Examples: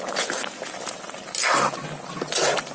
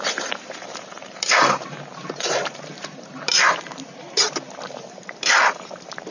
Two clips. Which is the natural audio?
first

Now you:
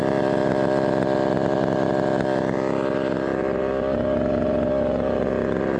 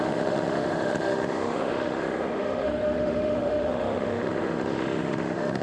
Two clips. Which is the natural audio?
first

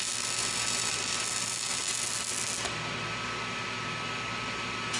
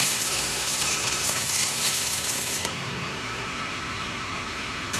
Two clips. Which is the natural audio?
first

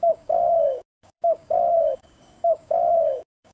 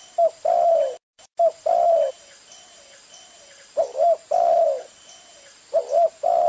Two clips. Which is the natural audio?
second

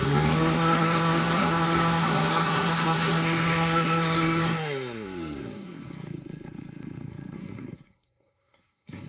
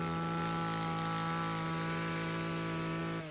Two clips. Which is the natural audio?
second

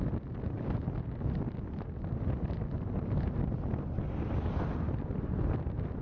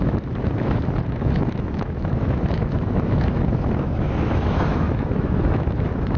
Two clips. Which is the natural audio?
first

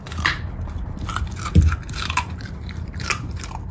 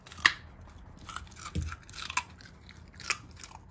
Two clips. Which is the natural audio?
second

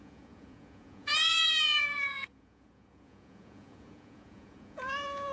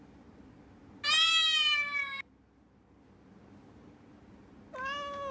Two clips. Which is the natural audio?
second